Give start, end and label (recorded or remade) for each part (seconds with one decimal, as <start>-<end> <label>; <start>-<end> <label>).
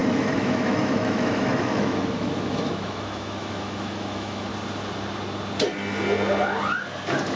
0.0-4.5 remade; 4.5-7.4 recorded